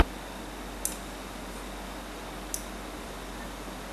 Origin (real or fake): real